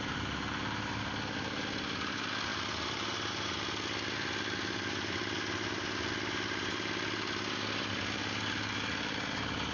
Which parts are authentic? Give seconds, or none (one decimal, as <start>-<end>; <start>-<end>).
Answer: 0.0-9.7